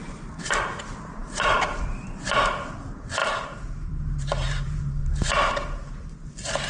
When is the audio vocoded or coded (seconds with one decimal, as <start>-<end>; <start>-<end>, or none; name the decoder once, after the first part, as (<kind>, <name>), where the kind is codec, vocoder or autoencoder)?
1.2-2.3 (vocoder, BigVGAN v2); 3.2-4.8